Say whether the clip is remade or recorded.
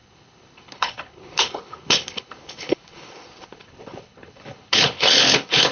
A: remade